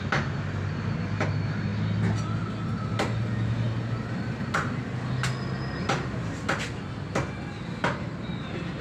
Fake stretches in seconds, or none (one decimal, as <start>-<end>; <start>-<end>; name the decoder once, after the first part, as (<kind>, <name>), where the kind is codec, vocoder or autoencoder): none